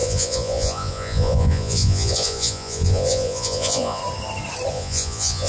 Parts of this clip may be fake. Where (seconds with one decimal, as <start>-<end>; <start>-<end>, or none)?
0.0-4.0; 4.7-5.5